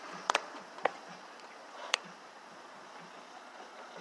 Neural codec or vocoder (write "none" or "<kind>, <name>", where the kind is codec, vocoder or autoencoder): vocoder, Vocos